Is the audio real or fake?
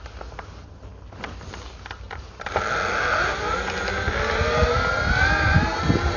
real